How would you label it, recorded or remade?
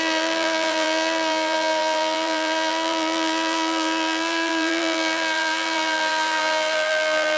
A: remade